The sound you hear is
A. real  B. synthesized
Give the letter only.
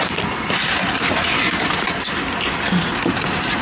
A